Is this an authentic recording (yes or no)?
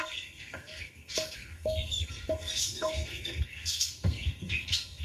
no